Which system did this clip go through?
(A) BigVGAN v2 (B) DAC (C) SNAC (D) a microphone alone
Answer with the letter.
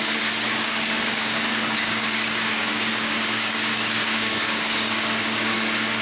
B